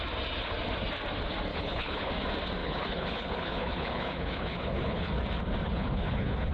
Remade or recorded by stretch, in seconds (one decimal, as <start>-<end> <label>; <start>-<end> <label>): 0.0-1.5 recorded; 1.5-2.1 remade; 2.1-2.6 recorded; 2.6-5.1 remade; 5.1-5.6 recorded; 5.6-6.5 remade